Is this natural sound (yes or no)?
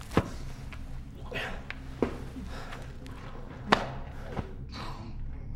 yes